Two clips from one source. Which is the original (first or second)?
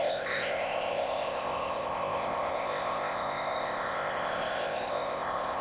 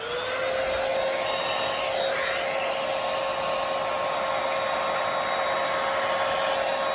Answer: second